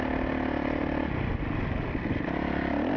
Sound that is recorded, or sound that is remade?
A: recorded